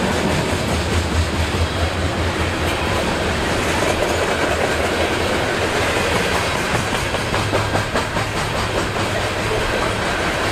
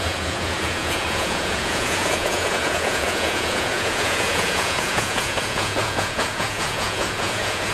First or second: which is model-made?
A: second